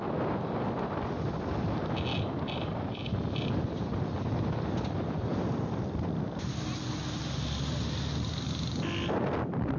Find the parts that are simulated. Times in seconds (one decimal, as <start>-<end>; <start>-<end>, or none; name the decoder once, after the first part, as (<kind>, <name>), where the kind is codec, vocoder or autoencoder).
none